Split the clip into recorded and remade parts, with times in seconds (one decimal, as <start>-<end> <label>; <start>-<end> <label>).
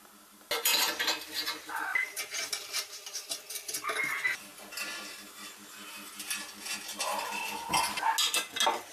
0.0-1.9 recorded; 1.9-3.3 remade; 3.3-8.9 recorded